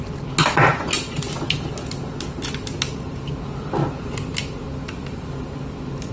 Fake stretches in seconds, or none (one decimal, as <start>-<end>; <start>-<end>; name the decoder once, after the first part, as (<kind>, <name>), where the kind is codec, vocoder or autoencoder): none